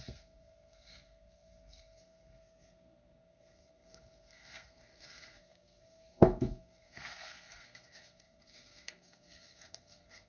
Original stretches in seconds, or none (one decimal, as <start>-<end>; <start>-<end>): none